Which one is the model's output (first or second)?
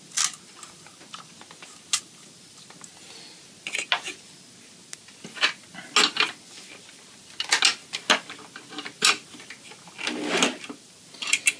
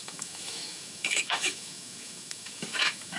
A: second